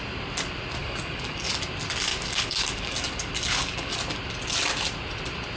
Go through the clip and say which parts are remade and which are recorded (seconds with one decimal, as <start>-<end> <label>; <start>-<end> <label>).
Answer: 0.0-0.8 recorded; 0.8-1.5 remade; 1.5-2.1 recorded; 2.1-3.9 remade; 3.9-5.6 recorded